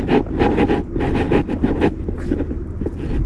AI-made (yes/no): no